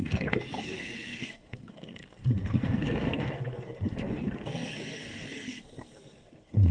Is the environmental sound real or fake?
fake